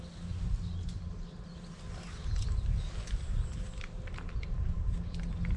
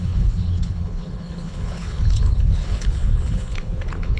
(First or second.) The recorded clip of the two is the first